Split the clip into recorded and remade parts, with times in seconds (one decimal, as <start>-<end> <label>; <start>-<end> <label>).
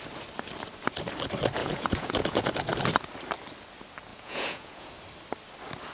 0.0-1.6 recorded; 1.6-2.4 remade; 2.4-4.1 recorded; 4.1-4.9 remade; 4.9-5.9 recorded